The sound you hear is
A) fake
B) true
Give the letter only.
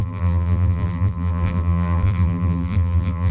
A